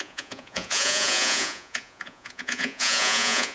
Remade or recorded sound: remade